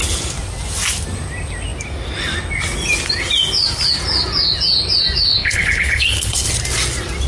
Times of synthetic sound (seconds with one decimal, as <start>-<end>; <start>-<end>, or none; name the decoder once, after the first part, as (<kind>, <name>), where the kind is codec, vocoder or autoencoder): 5.3-6.5 (codec, HILCodec)